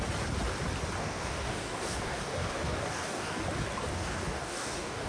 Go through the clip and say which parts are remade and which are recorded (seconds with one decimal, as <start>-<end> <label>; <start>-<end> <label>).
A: 0.0-1.0 recorded; 1.0-3.4 remade; 3.4-3.9 recorded; 3.9-5.1 remade